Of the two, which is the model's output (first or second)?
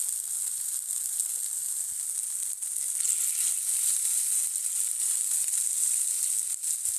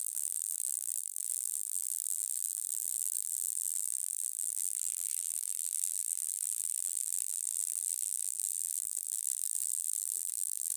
second